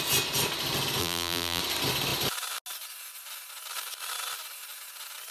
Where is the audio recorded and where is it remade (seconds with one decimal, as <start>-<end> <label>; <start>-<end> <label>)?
0.0-1.0 recorded; 1.0-1.6 remade; 1.6-5.3 recorded